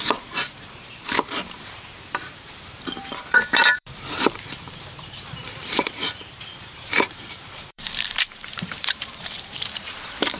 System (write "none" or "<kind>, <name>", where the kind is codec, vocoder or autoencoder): vocoder, BigVGAN v2